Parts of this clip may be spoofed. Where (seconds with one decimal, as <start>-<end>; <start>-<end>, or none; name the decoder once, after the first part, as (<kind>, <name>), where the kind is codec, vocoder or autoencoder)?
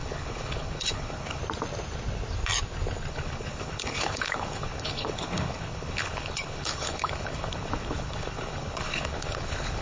0.0-1.4 (codec, HILCodec); 3.1-9.8